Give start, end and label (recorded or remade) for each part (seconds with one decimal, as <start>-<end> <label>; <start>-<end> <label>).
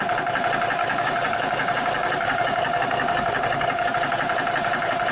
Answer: 0.0-0.8 recorded; 0.8-3.9 remade; 3.9-5.1 recorded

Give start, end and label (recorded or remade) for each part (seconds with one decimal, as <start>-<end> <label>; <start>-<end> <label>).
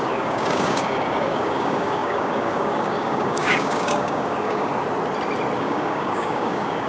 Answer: 0.0-4.7 remade; 4.7-5.6 recorded; 5.6-6.9 remade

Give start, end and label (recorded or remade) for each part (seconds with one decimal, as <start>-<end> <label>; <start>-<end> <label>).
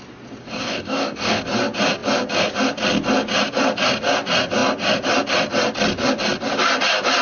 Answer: 0.0-0.4 recorded; 0.4-1.4 remade; 1.4-7.2 recorded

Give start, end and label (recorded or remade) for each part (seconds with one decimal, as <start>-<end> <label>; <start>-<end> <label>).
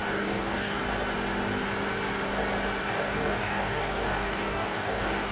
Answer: 0.0-0.8 remade; 0.8-2.8 recorded; 2.8-5.3 remade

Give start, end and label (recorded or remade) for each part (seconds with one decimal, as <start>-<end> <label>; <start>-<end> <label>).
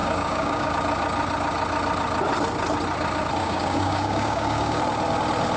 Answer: 0.0-0.7 remade; 0.7-3.4 recorded; 3.4-4.8 remade; 4.8-5.6 recorded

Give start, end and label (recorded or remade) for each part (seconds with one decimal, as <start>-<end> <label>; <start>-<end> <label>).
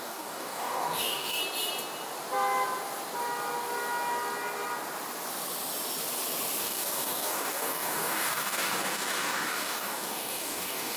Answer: 0.0-1.4 remade; 1.4-6.6 recorded; 6.6-11.0 remade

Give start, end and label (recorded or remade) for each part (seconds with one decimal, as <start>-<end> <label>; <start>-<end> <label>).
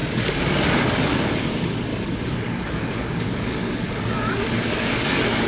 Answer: 0.0-1.5 remade; 1.5-1.9 recorded; 1.9-5.5 remade